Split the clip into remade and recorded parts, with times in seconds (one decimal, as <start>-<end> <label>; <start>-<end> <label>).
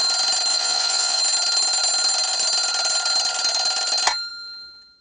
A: 0.0-0.5 recorded; 0.5-1.2 remade; 1.2-5.0 recorded